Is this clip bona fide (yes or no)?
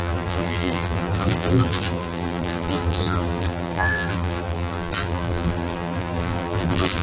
no